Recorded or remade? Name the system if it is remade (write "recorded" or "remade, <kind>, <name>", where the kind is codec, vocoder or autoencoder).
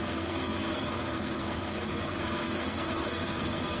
remade, codec, SNAC